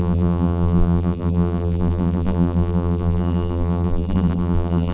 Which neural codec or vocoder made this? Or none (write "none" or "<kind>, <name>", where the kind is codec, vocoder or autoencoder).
vocoder, BigVGAN v2